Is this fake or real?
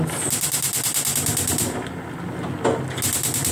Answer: real